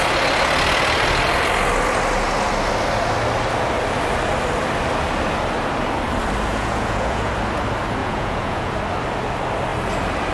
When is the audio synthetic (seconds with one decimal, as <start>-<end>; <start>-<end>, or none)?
6.5-7.3; 8.0-8.7